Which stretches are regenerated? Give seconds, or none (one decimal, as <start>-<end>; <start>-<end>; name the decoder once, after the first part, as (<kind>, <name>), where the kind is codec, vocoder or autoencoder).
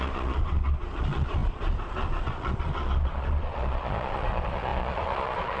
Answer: 0.0-5.6 (vocoder, Vocos)